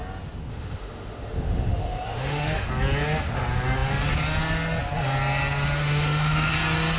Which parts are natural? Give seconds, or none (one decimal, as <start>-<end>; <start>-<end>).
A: 0.0-0.5; 2.7-5.8; 6.5-7.0